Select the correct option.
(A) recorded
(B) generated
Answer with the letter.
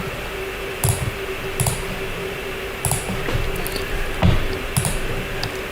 A